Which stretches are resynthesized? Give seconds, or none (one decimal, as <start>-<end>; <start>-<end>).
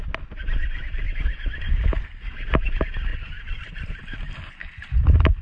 none